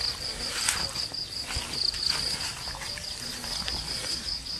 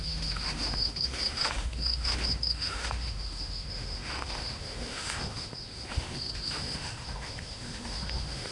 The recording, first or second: first